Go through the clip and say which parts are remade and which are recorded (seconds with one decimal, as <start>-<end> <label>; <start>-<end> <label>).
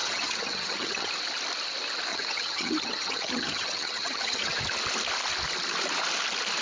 0.0-1.1 remade; 1.1-2.1 recorded; 2.1-4.6 remade; 4.6-6.6 recorded